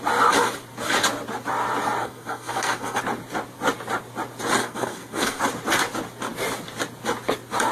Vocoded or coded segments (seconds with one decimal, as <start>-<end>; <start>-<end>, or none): 2.0-3.0; 4.6-5.4